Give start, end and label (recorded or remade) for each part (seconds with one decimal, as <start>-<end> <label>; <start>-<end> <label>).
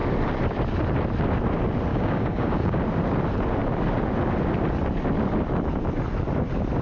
0.0-1.9 recorded; 1.9-2.8 remade; 2.8-6.8 recorded